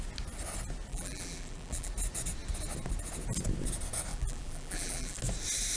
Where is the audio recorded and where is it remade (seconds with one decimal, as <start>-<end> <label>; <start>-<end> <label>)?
0.0-0.9 recorded; 0.9-1.9 remade; 1.9-4.1 recorded; 4.1-5.2 remade; 5.2-5.8 recorded